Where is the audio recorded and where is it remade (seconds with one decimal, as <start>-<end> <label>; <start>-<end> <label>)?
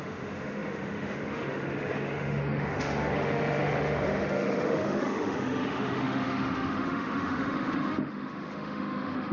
0.0-9.3 remade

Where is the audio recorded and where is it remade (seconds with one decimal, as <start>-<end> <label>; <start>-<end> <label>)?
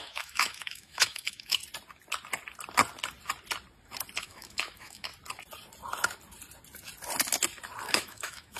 0.0-1.6 remade; 1.6-4.2 recorded; 4.2-5.1 remade; 5.1-7.9 recorded; 7.9-8.6 remade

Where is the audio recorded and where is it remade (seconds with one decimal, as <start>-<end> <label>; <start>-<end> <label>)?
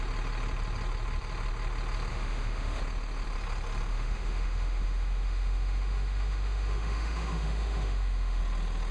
0.0-2.1 recorded; 2.1-2.8 remade; 2.8-3.9 recorded; 3.9-8.4 remade; 8.4-8.9 recorded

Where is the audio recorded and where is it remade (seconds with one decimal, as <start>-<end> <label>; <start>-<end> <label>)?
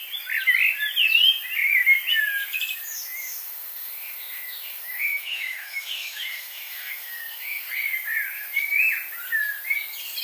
0.0-3.2 recorded; 3.2-7.7 remade; 7.7-10.2 recorded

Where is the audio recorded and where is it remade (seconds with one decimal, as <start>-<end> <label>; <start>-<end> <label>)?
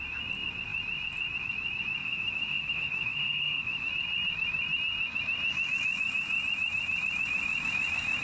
0.0-2.0 recorded; 2.0-3.9 remade; 3.9-8.2 recorded